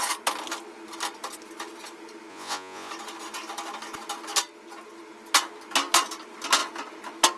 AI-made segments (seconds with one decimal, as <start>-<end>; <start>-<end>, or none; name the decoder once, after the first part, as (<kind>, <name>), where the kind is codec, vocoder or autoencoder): 2.3-2.9 (vocoder, Vocos)